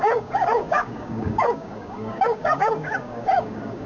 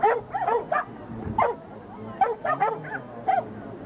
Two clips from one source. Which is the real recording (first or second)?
second